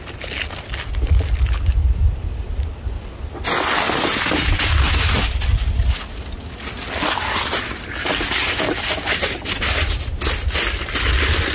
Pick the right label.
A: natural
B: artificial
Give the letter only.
A